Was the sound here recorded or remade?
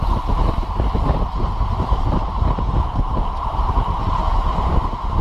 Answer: recorded